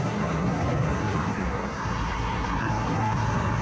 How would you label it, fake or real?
fake